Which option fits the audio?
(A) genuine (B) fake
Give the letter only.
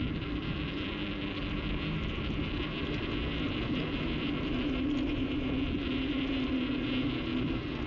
A